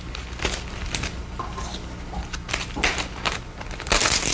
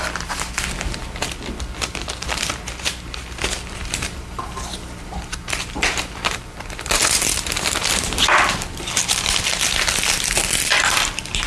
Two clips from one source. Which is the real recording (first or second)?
first